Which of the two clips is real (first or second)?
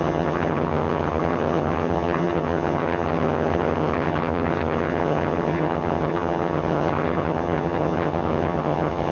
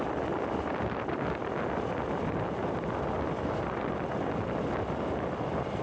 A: second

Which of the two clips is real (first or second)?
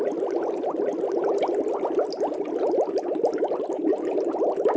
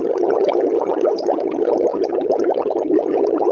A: first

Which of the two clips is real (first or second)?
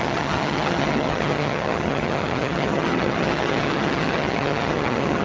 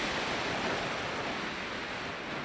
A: second